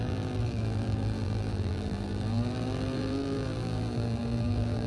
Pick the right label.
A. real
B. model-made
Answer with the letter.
B